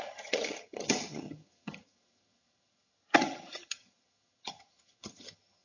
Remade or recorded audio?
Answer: remade